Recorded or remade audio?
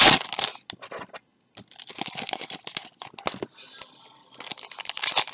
recorded